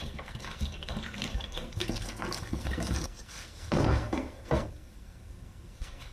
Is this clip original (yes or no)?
no